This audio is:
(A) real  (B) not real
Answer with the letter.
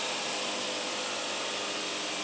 A